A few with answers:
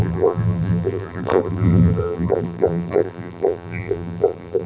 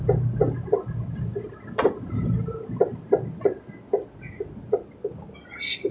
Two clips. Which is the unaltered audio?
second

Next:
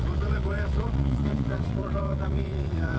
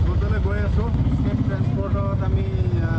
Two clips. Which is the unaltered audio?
second